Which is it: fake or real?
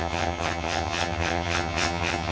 fake